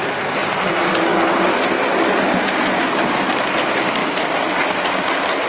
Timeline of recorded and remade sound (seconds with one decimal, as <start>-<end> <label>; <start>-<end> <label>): 0.0-5.5 recorded